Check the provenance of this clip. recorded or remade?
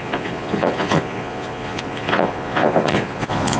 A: remade